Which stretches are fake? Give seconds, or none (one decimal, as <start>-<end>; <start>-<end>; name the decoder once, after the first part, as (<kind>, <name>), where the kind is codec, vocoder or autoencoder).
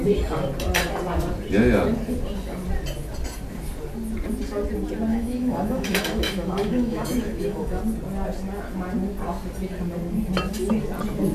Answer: 5.1-7.8 (autoencoder, DAC-VAE)